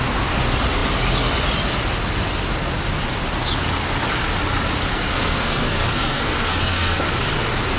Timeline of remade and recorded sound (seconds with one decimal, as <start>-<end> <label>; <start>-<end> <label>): 0.0-4.9 recorded; 4.9-7.0 remade; 7.0-7.8 recorded